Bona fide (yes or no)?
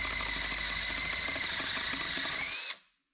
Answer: yes